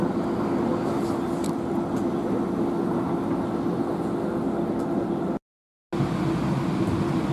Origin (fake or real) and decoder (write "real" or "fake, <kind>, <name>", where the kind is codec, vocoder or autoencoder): real